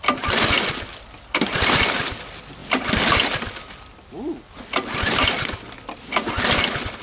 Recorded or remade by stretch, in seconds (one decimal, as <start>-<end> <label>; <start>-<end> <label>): 0.0-7.0 recorded